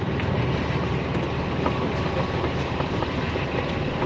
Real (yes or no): no